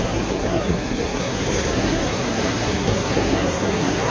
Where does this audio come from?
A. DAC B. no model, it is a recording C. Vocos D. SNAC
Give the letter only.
D